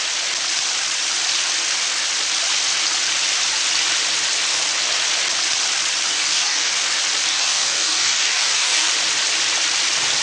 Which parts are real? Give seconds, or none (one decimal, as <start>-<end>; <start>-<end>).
0.0-6.1; 6.7-7.3; 8.9-10.2